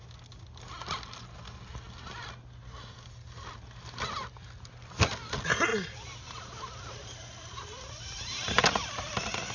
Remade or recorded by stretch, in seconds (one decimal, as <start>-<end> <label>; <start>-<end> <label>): 0.0-5.7 recorded; 5.7-8.6 remade; 8.6-9.5 recorded